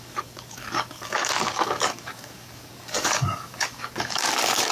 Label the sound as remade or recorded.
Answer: remade